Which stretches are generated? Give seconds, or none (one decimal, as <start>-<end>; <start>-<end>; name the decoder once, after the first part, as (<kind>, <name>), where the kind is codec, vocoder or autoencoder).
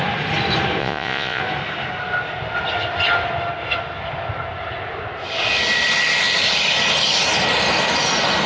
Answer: 0.8-1.4 (vocoder, Vocos)